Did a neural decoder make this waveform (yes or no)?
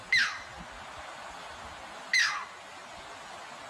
no